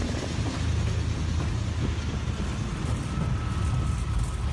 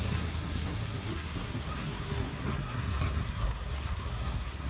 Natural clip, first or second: first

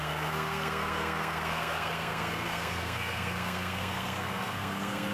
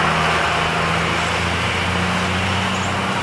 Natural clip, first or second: second